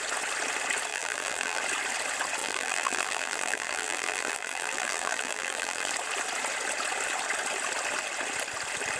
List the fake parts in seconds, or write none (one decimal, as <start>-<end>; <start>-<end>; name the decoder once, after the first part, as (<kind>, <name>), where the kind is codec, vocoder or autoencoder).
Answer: 0.9-1.6 (vocoder, BigVGAN v2); 2.4-5.9